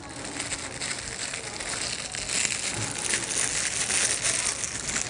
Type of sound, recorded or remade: recorded